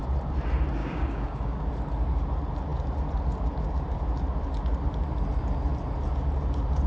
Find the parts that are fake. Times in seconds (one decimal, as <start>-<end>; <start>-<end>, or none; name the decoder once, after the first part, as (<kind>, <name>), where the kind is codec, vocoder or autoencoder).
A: 0.8-1.7 (codec, DAC)